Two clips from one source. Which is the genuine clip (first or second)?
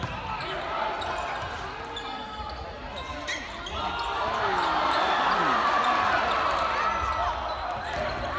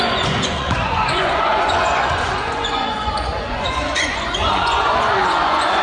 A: first